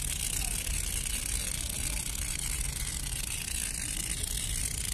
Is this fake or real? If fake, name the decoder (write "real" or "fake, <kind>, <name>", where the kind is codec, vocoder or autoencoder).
real